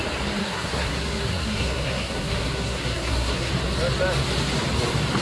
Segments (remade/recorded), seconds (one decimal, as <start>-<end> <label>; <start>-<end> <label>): 0.0-0.4 recorded; 0.4-3.5 remade; 3.5-5.2 recorded